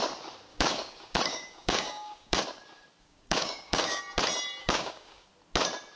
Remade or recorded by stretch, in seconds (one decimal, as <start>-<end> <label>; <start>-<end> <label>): 0.0-0.5 recorded; 0.5-2.4 remade; 2.4-3.0 recorded; 3.0-4.0 remade; 4.0-4.6 recorded; 4.6-5.3 remade; 5.3-6.0 recorded